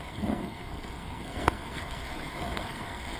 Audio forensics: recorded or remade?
remade